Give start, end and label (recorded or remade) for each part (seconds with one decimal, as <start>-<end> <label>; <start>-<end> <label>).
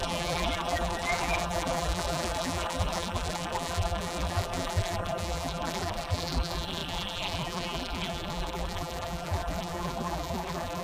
0.0-10.8 remade